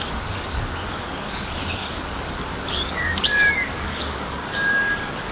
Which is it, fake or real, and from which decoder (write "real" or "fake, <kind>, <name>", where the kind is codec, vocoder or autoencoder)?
fake, codec, DAC